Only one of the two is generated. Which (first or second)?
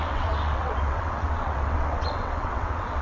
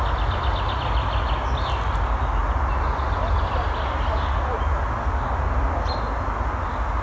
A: first